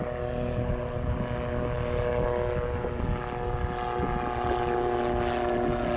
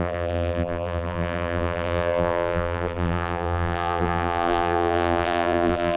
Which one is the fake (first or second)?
second